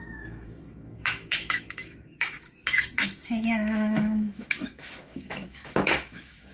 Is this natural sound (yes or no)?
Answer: no